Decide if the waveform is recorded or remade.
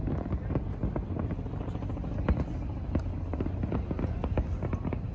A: recorded